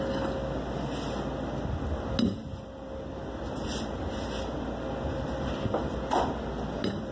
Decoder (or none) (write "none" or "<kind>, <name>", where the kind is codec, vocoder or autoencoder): none